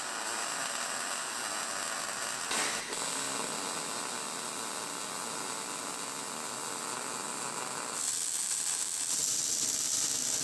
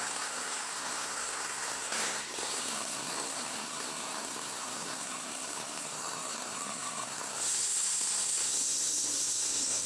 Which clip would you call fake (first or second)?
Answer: second